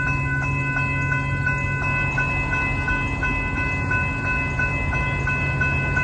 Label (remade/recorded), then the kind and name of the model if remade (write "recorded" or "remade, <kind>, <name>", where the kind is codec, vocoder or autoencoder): recorded